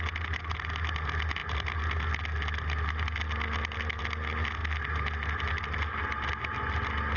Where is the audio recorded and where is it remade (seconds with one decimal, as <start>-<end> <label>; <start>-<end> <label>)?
0.0-7.2 recorded